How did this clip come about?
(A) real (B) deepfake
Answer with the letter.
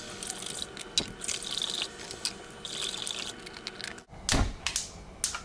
A